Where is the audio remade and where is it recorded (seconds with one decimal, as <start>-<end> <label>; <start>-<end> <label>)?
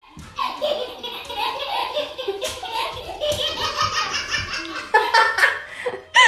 0.0-1.8 recorded; 1.8-3.0 remade; 3.0-6.3 recorded